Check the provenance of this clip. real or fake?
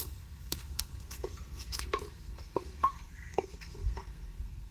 fake